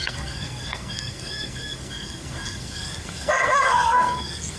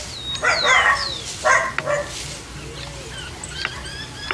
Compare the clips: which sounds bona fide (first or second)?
second